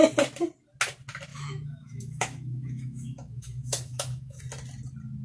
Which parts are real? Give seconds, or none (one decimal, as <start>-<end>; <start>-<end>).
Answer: 0.0-1.3; 4.4-5.2